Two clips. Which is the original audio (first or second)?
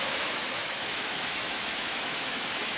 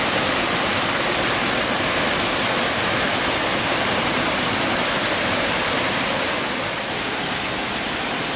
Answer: second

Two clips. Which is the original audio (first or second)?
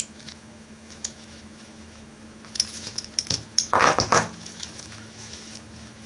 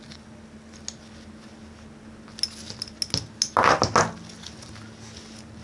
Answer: second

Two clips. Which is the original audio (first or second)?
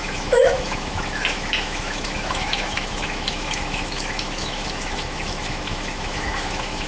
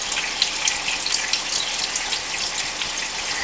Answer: second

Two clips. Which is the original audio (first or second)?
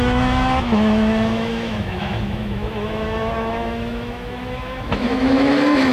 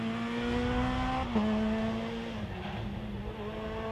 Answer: second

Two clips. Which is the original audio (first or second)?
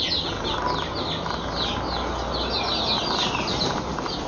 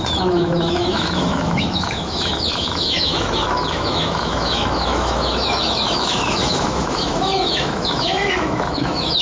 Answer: first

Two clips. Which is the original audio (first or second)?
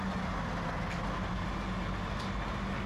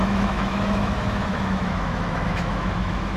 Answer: first